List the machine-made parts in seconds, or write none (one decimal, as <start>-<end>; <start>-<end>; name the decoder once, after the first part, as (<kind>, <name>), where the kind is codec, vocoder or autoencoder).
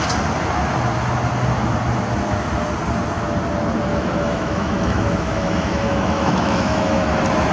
3.9-7.1 (autoencoder, DAC-VAE)